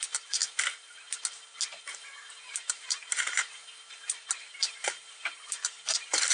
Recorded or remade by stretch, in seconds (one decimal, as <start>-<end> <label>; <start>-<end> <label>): 0.0-0.4 remade; 0.4-2.5 recorded; 2.5-3.6 remade; 3.6-4.5 recorded; 4.5-6.3 remade